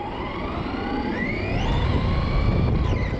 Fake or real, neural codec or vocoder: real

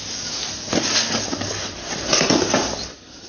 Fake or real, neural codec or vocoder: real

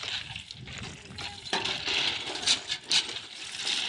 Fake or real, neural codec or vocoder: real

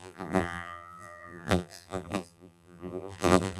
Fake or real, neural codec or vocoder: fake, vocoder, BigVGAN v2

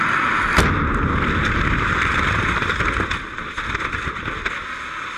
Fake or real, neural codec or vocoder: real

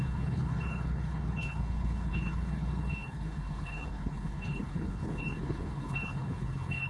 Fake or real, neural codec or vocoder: fake, codec, HILCodec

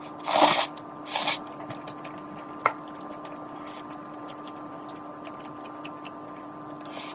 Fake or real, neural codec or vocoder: real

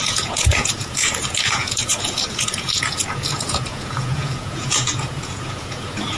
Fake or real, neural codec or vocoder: fake, vocoder, Vocos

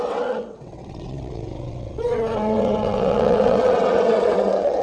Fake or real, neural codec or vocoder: fake, vocoder, WaveNeXt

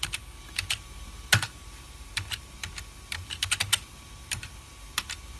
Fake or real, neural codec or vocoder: fake, vocoder, BigVGAN v2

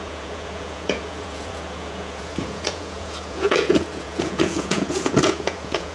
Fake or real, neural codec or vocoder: fake, vocoder, Vocos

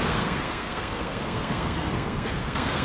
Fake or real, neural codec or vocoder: fake, codec, SNAC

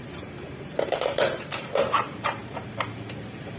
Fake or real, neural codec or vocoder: fake, vocoder, BigVGAN v2